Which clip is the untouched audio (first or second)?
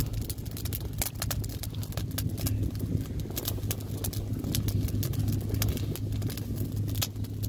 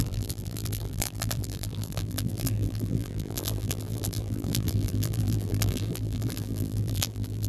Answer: first